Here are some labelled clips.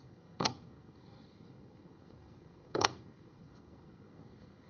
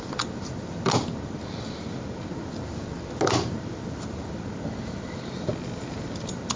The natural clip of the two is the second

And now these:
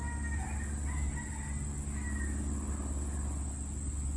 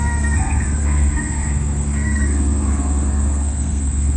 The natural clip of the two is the first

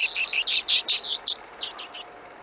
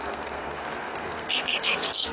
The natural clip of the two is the first